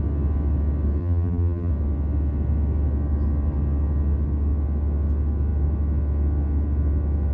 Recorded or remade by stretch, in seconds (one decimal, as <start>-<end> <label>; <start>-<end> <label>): 0.0-1.0 recorded; 1.0-1.7 remade; 1.7-7.3 recorded